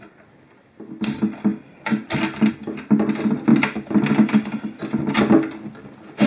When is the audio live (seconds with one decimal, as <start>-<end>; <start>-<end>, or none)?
0.0-6.3